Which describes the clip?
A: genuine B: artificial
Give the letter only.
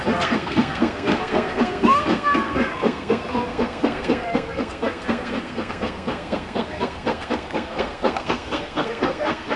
B